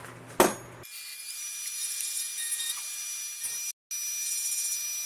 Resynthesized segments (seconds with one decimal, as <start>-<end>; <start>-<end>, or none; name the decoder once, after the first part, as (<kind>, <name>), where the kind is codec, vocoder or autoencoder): none